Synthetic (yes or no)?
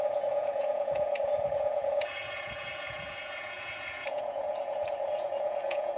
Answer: yes